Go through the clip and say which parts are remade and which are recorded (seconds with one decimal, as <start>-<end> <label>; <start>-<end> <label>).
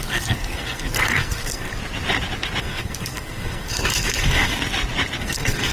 0.0-1.7 remade; 1.7-2.6 recorded; 2.6-4.6 remade; 4.6-5.2 recorded; 5.2-5.7 remade